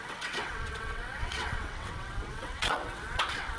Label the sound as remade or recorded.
remade